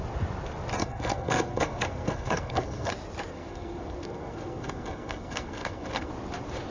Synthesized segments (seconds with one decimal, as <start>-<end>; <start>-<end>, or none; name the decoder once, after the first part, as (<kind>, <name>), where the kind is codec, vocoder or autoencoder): 0.8-2.9 (codec, SNAC); 3.3-6.1